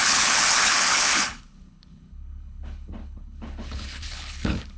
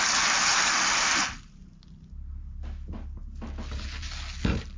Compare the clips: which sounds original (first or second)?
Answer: second